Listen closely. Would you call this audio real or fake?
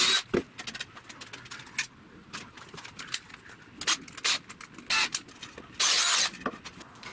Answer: real